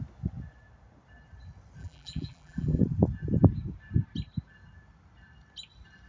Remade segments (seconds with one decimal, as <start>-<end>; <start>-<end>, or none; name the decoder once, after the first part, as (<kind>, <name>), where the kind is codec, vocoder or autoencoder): 1.8-2.8 (vocoder, BigVGAN v2)